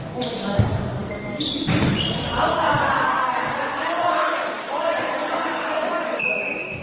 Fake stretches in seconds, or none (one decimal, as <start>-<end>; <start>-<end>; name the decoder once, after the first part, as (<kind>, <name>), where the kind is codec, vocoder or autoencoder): 1.0-1.7 (codec, DAC); 2.5-6.2